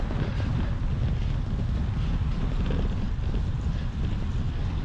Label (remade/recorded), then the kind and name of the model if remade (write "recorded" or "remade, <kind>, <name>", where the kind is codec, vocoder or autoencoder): recorded